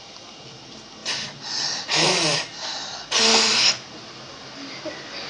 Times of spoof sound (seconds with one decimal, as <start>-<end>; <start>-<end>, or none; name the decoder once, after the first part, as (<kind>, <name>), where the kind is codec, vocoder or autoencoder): none